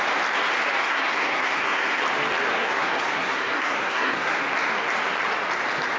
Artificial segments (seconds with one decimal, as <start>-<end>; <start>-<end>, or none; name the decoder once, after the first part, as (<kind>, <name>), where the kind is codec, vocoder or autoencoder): 0.8-2.0 (codec, SNAC); 2.5-4.3